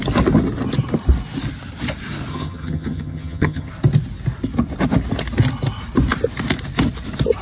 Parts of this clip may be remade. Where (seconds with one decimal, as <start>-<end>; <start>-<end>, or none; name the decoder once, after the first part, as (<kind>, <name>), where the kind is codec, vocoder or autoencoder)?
2.3-3.7 (vocoder, HiFi-GAN)